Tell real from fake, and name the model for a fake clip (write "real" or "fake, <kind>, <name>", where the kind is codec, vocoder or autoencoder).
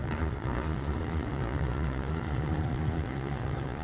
fake, vocoder, Vocos